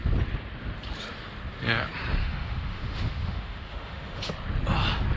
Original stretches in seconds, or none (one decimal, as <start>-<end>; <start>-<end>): 0.0-2.2; 4.3-5.2